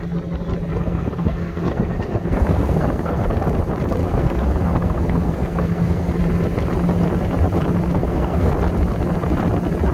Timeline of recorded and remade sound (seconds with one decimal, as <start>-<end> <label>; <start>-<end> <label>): 0.0-0.7 recorded; 0.7-3.4 remade; 3.4-4.0 recorded; 4.0-6.2 remade; 6.2-8.0 recorded; 8.0-8.5 remade; 8.5-9.9 recorded